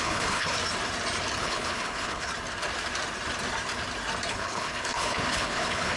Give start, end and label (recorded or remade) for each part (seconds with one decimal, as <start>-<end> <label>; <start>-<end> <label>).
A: 0.0-0.6 remade; 0.6-1.4 recorded; 1.4-2.3 remade; 2.3-4.3 recorded; 4.3-6.0 remade